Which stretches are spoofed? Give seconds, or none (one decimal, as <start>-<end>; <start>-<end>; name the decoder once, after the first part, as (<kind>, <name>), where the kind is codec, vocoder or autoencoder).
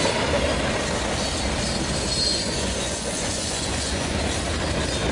2.3-4.2 (vocoder, Vocos)